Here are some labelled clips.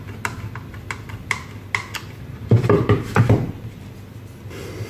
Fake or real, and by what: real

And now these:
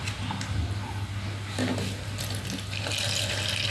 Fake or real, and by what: real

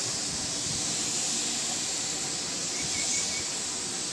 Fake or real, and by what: real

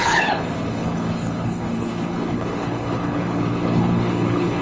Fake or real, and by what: fake, codec, HILCodec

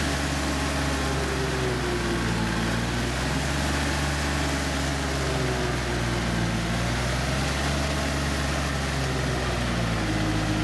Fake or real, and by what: real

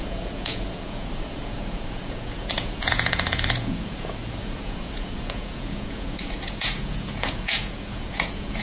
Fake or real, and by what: fake, vocoder, Vocos